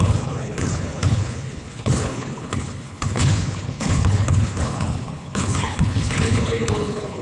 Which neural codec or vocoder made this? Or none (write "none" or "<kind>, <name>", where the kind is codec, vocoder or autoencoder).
codec, HILCodec